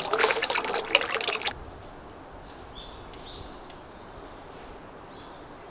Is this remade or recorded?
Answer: recorded